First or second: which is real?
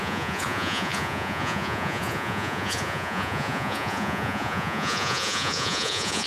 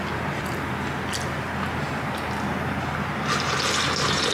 second